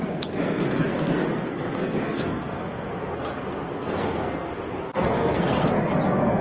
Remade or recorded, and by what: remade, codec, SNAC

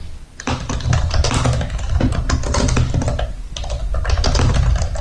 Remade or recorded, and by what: recorded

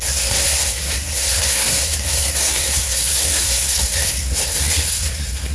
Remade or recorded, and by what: remade, codec, SNAC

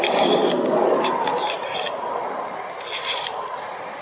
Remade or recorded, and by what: remade, vocoder, BigVGAN v2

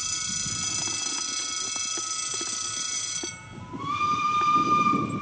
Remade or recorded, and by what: recorded